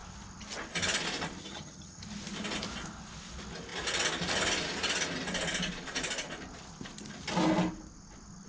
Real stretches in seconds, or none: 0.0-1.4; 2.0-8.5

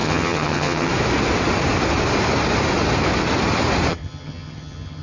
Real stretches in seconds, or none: 0.9-3.9

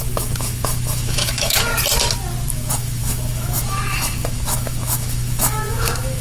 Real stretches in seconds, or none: 1.7-2.5

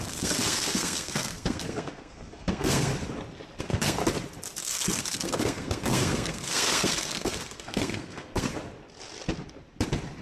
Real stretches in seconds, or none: 2.9-3.6; 4.0-4.6; 8.5-10.2